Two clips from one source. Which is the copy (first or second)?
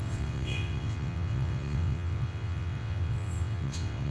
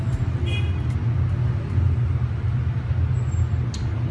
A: first